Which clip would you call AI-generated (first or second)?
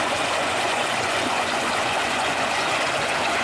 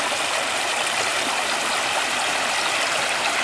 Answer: first